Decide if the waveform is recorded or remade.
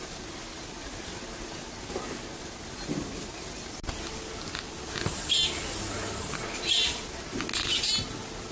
recorded